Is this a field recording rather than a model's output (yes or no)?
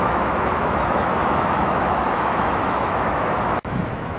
no